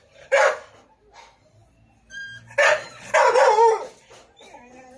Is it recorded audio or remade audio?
recorded